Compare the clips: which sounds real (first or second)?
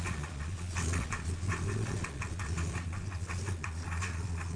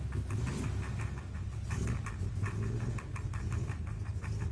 second